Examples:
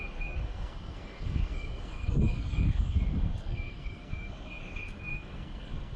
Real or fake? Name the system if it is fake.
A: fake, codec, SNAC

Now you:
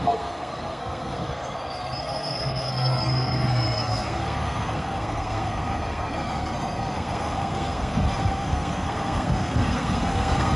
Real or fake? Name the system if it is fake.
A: fake, codec, SNAC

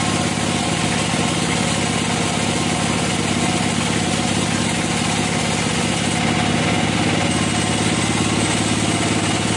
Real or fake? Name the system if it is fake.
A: real